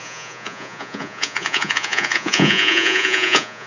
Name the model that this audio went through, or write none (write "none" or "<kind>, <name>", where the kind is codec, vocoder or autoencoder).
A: vocoder, Vocos